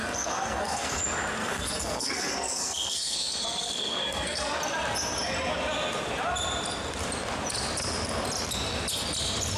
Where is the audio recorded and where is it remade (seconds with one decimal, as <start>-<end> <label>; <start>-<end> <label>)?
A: 0.0-1.0 remade; 1.0-1.4 recorded; 1.4-4.6 remade; 4.6-9.6 recorded